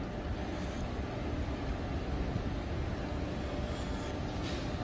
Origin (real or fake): real